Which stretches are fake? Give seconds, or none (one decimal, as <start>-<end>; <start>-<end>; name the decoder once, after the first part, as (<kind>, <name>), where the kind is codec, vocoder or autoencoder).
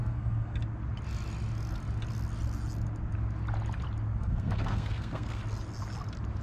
0.0-0.6 (codec, SNAC); 4.2-5.4